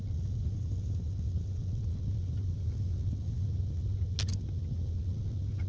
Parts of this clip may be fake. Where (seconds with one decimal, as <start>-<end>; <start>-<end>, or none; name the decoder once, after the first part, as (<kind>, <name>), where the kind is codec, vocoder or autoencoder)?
none